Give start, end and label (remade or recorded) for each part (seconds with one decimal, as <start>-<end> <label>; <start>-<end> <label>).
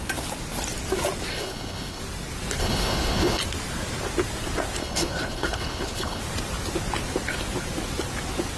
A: 0.0-1.3 recorded; 1.3-2.0 remade; 2.0-2.6 recorded; 2.6-3.4 remade; 3.4-4.8 recorded; 4.8-6.2 remade; 6.2-8.6 recorded